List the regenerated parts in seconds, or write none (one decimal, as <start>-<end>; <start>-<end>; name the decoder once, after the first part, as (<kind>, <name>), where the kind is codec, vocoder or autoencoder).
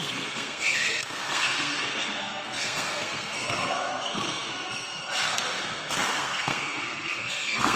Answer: 0.0-7.8 (codec, SNAC)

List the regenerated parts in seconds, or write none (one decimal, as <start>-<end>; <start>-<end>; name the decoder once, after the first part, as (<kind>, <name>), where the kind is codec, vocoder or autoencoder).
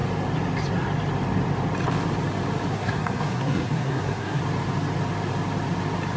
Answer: 2.7-4.4 (codec, SNAC)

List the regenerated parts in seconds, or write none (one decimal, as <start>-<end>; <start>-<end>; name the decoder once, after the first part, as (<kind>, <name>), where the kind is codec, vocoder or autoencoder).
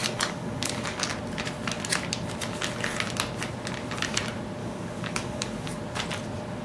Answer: 0.0-1.1 (codec, DAC); 4.6-5.8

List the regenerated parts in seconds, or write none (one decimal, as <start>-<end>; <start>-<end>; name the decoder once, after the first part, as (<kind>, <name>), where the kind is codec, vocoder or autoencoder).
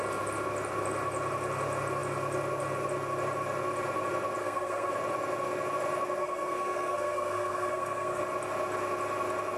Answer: 4.4-4.9 (codec, SNAC); 6.2-8.2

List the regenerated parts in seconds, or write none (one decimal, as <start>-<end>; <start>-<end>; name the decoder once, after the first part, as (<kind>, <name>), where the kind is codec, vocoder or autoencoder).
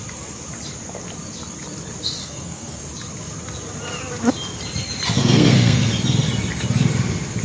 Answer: 2.2-2.8 (codec, SNAC); 5.2-5.9